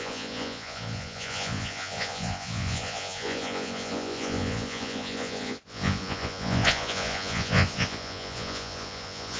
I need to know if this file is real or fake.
fake